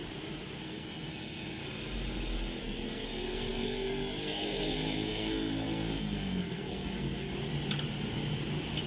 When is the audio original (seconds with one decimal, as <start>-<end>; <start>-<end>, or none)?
0.0-0.6; 1.6-2.6; 7.3-8.9